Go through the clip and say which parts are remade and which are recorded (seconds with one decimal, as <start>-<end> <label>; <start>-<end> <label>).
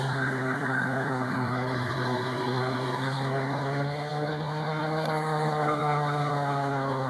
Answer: 0.0-7.1 remade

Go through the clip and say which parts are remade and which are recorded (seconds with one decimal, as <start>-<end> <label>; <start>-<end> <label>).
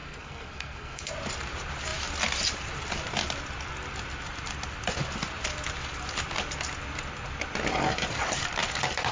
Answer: 0.0-1.1 remade; 1.1-9.1 recorded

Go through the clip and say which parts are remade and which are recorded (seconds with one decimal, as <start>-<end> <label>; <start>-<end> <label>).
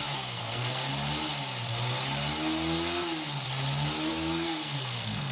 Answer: 0.0-0.9 remade; 0.9-4.1 recorded; 4.1-5.3 remade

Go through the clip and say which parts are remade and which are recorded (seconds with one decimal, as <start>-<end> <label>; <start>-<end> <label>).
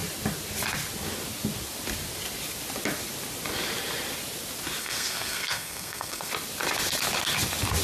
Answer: 0.0-4.8 recorded; 4.8-6.3 remade; 6.3-7.8 recorded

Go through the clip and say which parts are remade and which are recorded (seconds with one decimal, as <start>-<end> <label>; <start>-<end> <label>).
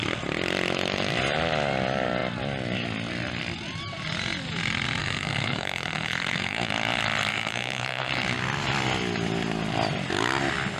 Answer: 0.0-5.0 recorded; 5.0-6.7 remade; 6.7-7.3 recorded; 7.3-8.1 remade; 8.1-10.8 recorded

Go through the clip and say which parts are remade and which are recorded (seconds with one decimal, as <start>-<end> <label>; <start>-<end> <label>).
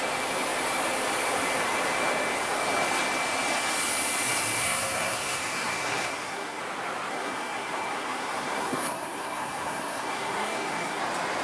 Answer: 0.0-4.6 recorded; 4.6-6.6 remade; 6.6-7.1 recorded; 7.1-11.0 remade; 11.0-11.4 recorded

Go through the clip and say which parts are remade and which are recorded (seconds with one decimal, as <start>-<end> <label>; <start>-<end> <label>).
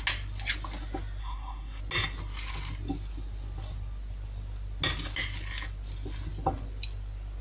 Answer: 0.0-1.2 recorded; 1.2-1.8 remade; 1.8-7.4 recorded